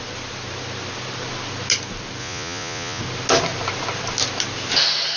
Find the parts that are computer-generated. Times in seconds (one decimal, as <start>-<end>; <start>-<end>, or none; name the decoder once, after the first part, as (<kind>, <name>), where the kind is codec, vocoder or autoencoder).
2.2-3.0 (vocoder, Vocos)